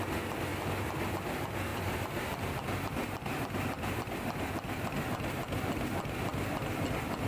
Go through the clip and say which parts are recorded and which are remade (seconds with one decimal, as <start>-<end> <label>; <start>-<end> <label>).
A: 0.0-0.5 recorded; 0.5-1.1 remade; 1.1-1.7 recorded; 1.7-2.5 remade; 2.5-7.3 recorded